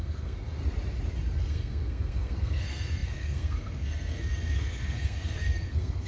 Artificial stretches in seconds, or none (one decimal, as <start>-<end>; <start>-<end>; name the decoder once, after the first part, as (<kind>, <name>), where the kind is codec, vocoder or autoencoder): 0.0-0.6 (codec, SNAC); 1.4-6.1